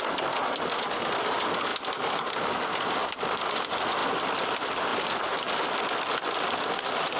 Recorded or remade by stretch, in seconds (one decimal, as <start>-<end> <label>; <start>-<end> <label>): 0.0-7.2 recorded